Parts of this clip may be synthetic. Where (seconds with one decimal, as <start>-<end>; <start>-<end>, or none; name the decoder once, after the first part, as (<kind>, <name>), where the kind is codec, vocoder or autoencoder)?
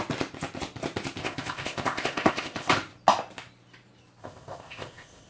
1.2-2.7 (codec, ZipCodec); 4.2-5.3